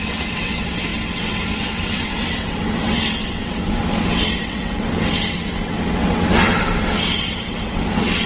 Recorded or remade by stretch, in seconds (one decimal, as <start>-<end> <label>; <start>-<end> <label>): 0.0-8.3 remade

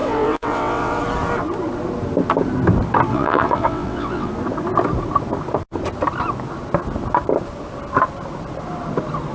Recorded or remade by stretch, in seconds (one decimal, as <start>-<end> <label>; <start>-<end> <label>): 0.0-1.0 remade; 1.0-3.1 recorded; 3.1-4.3 remade; 4.3-9.3 recorded

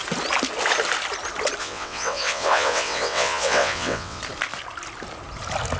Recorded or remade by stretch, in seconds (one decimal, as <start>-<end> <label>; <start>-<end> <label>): 0.0-1.6 recorded; 1.6-4.2 remade; 4.2-5.8 recorded